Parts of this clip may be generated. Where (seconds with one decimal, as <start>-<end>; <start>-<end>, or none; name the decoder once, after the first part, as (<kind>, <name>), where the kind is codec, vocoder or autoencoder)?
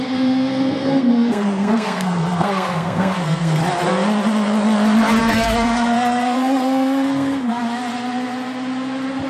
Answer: 0.0-3.6 (codec, SNAC); 5.2-7.6